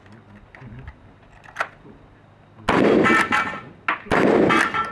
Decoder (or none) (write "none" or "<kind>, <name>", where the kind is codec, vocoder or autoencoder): none